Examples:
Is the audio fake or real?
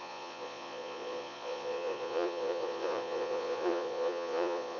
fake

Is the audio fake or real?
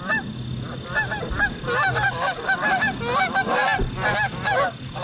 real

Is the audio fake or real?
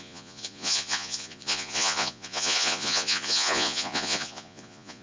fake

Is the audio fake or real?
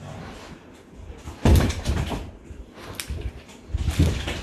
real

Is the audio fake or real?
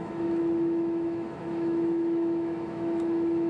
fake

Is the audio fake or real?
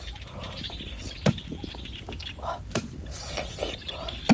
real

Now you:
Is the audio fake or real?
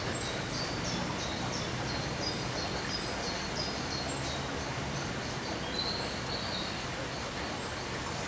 real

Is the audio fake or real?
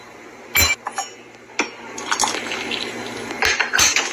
real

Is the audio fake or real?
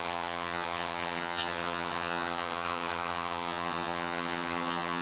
fake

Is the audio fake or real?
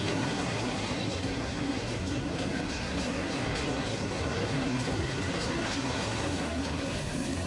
fake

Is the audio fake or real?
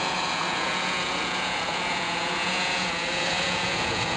fake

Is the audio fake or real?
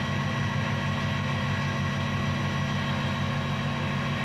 real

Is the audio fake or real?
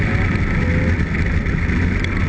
real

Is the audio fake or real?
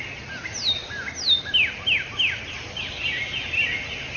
real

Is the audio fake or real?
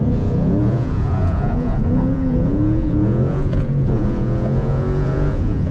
fake